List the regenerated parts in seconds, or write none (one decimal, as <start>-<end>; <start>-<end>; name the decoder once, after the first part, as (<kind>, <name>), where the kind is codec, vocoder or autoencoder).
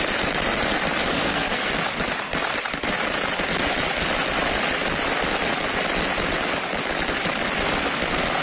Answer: 1.1-1.7 (codec, SNAC)